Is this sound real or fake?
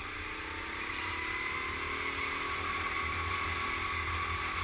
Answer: real